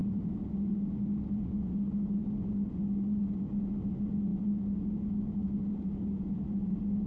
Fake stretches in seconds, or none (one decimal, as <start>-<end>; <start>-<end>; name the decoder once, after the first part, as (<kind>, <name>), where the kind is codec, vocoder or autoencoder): 0.0-0.7 (vocoder, BigVGAN v2)